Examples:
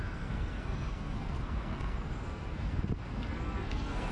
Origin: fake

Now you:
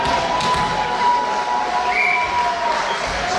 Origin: real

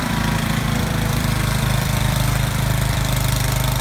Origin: fake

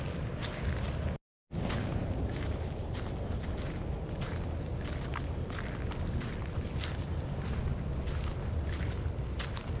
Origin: real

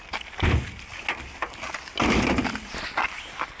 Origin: real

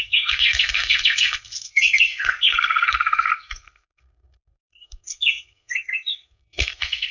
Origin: fake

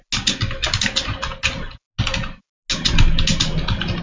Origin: real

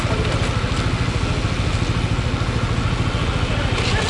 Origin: real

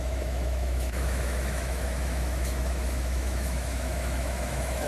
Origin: fake